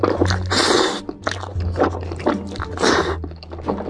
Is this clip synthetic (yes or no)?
no